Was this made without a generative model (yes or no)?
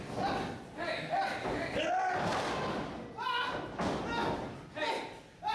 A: yes